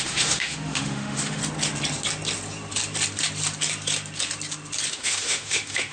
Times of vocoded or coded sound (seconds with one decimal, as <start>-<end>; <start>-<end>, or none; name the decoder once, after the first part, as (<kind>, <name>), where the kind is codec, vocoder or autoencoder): 0.0-1.4 (autoencoder, DAC-VAE); 4.9-5.9